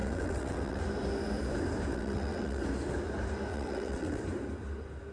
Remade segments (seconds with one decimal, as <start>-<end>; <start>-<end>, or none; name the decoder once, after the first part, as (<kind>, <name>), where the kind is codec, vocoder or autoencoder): 0.0-0.8 (vocoder, WaveNeXt); 1.9-2.6; 3.5-4.2

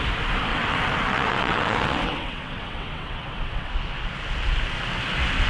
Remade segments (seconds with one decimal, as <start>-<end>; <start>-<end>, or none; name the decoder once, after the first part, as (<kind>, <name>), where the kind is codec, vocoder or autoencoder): 0.5-3.7 (vocoder, WaveNeXt)

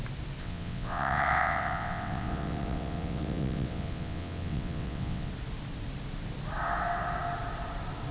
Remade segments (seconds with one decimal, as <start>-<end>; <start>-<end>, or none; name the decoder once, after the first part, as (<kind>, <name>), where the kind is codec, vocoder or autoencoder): 0.4-5.3 (vocoder, WaveNeXt)

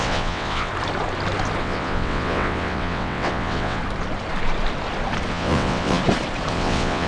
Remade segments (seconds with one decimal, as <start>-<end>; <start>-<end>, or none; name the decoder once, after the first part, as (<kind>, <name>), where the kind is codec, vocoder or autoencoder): 0.0-0.7 (vocoder, WaveNeXt); 1.6-3.8; 5.3-6.0; 6.5-7.1